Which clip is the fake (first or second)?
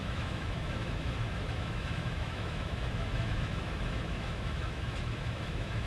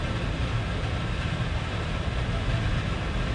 first